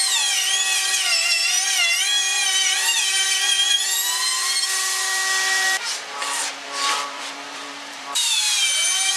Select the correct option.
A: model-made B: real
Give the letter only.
A